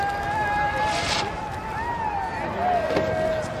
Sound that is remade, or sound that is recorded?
recorded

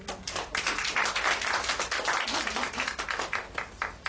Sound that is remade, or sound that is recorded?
recorded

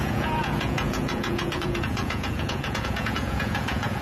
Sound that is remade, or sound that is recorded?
remade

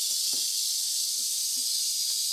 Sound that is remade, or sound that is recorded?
remade